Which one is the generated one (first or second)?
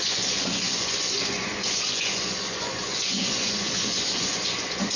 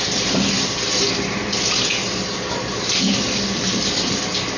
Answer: first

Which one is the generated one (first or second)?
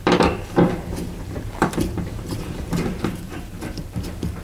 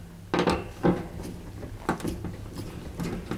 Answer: first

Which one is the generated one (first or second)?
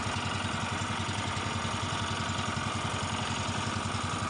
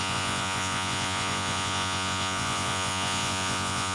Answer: second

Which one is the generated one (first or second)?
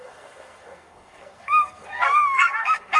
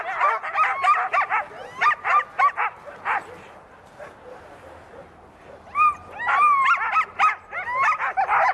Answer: first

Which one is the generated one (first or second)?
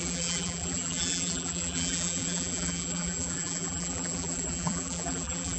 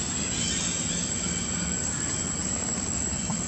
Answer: first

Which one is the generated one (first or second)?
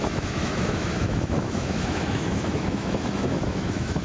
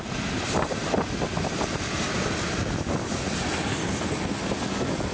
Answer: first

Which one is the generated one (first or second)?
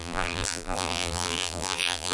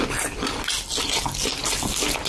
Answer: first